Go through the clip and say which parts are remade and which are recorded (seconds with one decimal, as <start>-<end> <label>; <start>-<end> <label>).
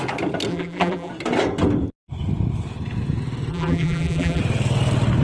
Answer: 0.0-0.5 recorded; 0.5-1.1 remade; 1.1-3.5 recorded; 3.5-4.4 remade; 4.4-5.2 recorded